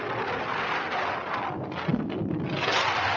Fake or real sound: real